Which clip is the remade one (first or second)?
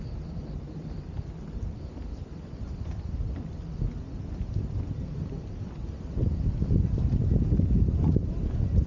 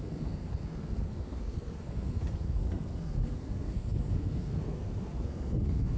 second